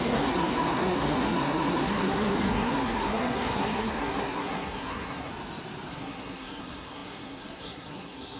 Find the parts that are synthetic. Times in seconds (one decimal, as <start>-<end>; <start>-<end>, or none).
0.0-5.3; 5.9-8.4